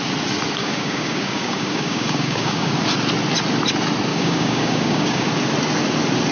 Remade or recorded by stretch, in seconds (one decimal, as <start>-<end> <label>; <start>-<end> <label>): 0.0-0.6 recorded; 0.6-2.7 remade; 2.7-4.1 recorded; 4.1-5.3 remade; 5.3-6.3 recorded